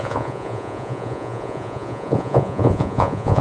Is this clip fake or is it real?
fake